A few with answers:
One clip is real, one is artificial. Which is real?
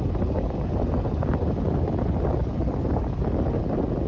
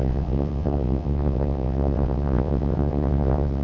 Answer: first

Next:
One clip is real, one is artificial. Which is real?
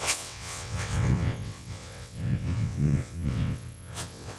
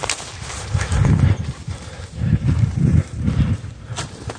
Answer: second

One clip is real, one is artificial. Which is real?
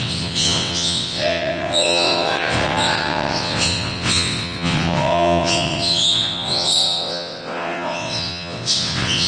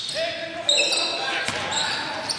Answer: second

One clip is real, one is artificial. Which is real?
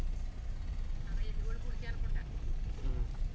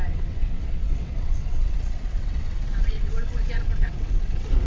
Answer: first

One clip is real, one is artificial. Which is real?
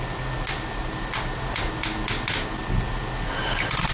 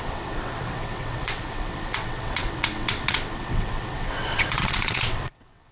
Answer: first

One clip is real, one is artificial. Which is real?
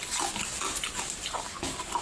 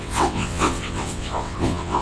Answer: first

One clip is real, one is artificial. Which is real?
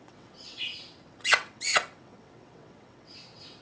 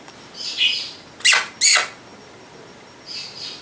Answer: second